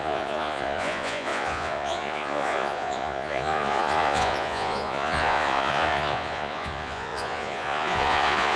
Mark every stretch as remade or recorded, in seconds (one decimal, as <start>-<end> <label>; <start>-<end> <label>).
0.0-8.6 remade